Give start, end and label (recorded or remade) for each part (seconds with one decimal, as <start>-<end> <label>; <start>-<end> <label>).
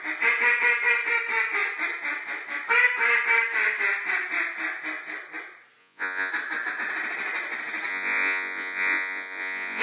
0.0-5.8 recorded; 5.8-6.3 remade; 6.3-7.9 recorded; 7.9-9.8 remade